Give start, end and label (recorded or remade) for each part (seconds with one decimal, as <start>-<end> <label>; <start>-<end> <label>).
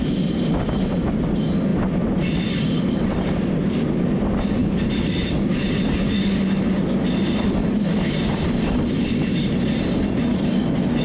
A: 0.0-11.0 recorded